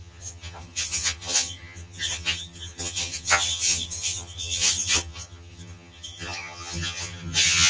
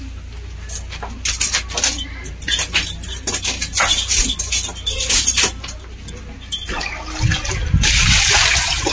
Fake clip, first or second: first